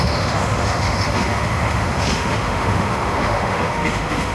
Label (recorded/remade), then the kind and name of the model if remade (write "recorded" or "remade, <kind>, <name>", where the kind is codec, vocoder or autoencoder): remade, autoencoder, DAC-VAE